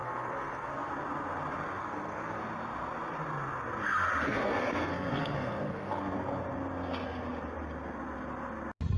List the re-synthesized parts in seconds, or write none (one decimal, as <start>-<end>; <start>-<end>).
0.0-0.9; 1.8-2.4; 4.3-6.0